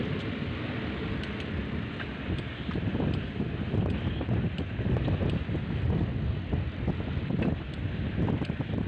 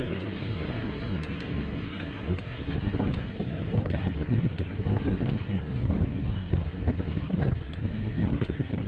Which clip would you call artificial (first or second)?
second